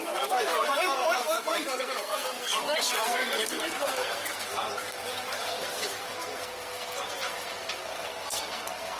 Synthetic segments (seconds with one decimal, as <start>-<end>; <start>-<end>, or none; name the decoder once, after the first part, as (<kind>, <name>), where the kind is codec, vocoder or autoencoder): 0.0-9.0 (codec, SNAC)